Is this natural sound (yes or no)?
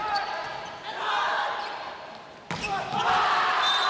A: yes